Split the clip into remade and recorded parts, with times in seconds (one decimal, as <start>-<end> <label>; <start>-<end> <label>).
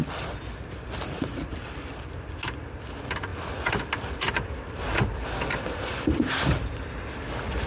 0.0-1.9 remade; 1.9-3.3 recorded; 3.3-6.9 remade; 6.9-7.7 recorded